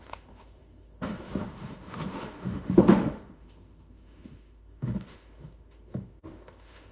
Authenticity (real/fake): fake